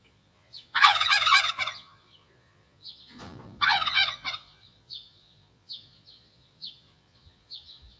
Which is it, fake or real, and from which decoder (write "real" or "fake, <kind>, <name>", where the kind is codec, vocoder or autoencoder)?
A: fake, vocoder, Vocos